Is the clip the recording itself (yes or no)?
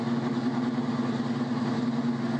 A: yes